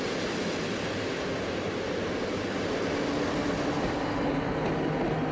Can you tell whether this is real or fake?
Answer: real